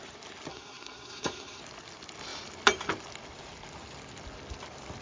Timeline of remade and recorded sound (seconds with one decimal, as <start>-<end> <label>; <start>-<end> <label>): 0.0-0.5 recorded; 0.5-1.6 remade; 1.6-5.0 recorded